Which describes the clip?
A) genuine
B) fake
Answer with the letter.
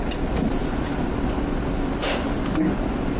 A